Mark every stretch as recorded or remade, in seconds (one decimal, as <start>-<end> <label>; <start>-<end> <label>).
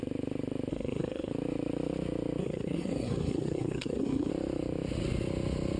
0.0-0.7 recorded; 0.7-1.3 remade; 1.3-2.4 recorded; 2.4-4.3 remade; 4.3-5.8 recorded